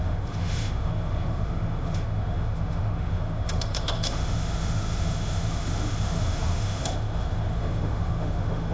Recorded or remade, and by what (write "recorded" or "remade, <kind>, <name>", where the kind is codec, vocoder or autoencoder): remade, autoencoder, DAC-VAE